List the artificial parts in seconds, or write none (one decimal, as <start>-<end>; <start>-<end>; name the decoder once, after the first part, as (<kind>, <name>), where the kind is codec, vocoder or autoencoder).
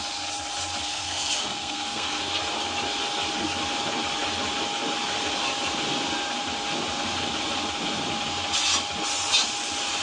0.9-2.2 (codec, SNAC)